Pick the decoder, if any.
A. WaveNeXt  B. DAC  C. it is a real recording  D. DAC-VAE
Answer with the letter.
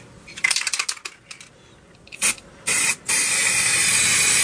C